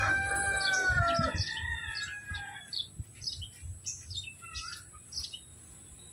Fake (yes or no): no